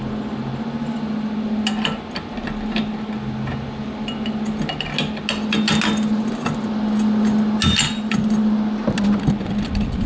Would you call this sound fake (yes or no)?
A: no